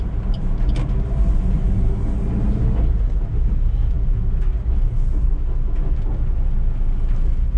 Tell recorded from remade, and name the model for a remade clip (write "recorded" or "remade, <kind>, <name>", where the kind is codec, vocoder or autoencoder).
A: recorded